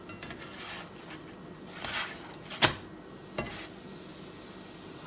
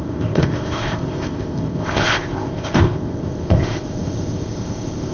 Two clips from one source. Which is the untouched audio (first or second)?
first